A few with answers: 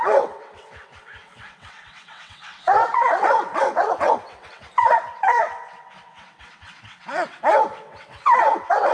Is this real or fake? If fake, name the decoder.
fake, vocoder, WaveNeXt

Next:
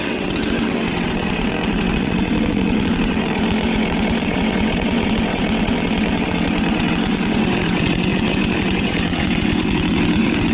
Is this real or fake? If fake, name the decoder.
fake, vocoder, WaveNeXt